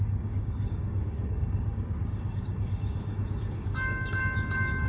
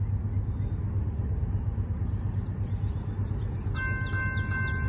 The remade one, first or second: first